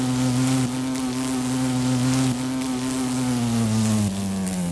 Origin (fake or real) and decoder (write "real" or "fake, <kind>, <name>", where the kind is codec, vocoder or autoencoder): real